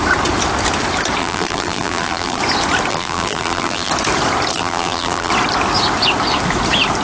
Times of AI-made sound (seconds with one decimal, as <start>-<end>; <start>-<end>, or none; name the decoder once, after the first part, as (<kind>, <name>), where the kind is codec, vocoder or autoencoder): 1.2-2.4 (vocoder, BigVGAN v2); 2.9-3.9; 4.5-5.3